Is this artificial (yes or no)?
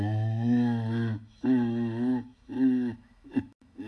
yes